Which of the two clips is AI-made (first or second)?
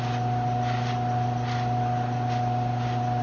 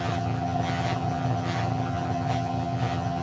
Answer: second